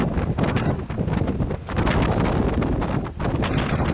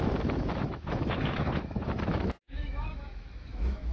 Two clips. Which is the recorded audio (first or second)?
first